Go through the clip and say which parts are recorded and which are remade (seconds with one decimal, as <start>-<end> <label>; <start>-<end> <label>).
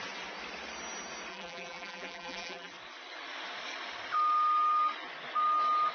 0.0-1.3 recorded; 1.3-2.7 remade; 2.7-5.9 recorded